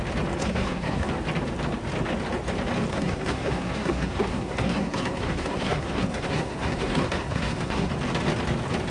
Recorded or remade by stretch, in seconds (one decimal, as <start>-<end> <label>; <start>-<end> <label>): 0.0-0.4 recorded; 0.4-1.1 remade; 1.1-2.9 recorded; 2.9-7.9 remade; 7.9-8.9 recorded